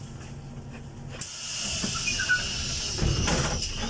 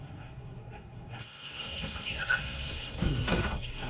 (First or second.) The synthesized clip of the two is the second